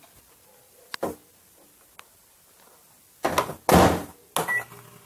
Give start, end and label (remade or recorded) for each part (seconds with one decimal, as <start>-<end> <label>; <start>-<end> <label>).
0.0-5.1 recorded